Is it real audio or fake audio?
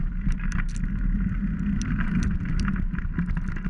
real